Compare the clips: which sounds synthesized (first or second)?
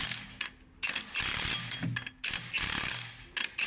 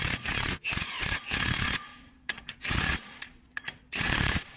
second